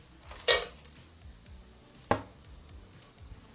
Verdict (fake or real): real